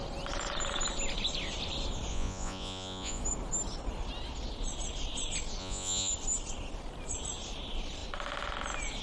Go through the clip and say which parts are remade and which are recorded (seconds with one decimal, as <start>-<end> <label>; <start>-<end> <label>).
0.0-2.1 recorded; 2.1-3.2 remade; 3.2-5.6 recorded; 5.6-6.1 remade; 6.1-9.0 recorded